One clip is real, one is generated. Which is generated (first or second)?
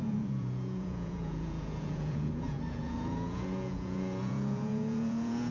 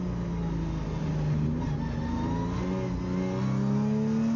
first